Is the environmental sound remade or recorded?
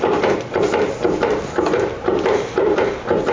remade